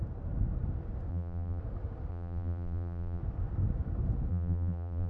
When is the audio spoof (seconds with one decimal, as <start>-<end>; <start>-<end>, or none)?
1.1-1.6; 2.1-3.2; 4.3-5.1